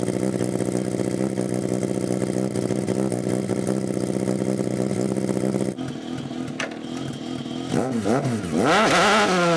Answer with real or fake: real